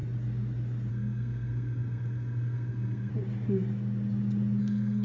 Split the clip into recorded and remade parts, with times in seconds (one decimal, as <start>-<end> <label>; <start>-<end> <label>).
0.0-0.9 recorded; 0.9-3.1 remade; 3.1-4.6 recorded; 4.6-5.0 remade